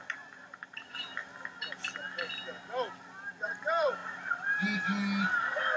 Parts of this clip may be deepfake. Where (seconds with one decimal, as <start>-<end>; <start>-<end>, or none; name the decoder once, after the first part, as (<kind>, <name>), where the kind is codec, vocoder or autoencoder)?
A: 0.0-1.2 (vocoder, BigVGAN v2); 3.0-4.0